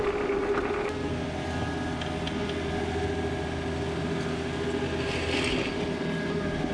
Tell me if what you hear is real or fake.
real